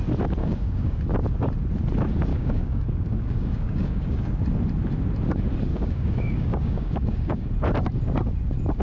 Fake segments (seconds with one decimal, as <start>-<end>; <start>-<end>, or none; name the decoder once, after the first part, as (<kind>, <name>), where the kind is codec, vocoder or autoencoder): 0.4-1.0 (codec, DAC); 2.3-4.3; 5.7-7.5